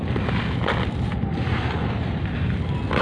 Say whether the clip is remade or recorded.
recorded